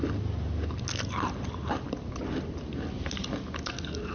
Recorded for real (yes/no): yes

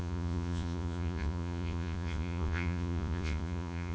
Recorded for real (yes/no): no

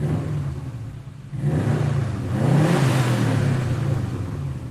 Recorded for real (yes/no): yes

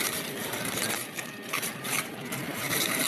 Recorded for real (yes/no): no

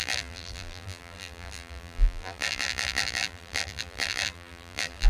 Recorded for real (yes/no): no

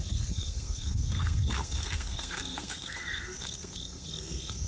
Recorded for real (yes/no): no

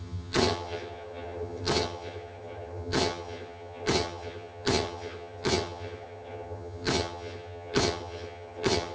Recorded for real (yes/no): no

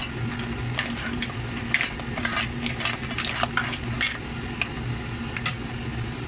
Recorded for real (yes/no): yes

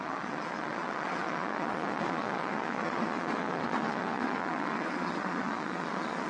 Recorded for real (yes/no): no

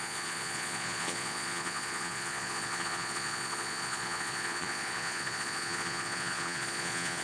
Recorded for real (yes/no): no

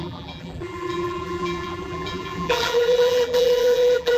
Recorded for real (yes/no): no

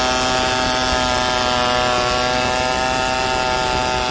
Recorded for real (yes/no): yes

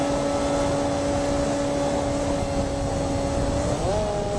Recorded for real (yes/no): yes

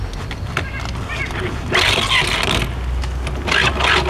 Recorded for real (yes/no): yes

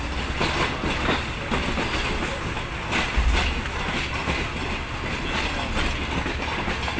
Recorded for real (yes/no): yes